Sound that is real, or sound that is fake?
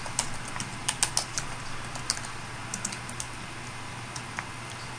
real